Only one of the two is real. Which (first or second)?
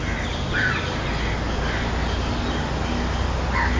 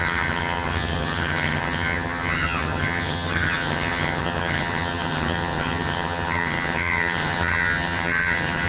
first